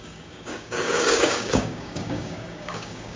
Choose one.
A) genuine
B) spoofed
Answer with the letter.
B